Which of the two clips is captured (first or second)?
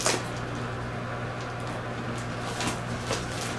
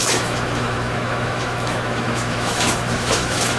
first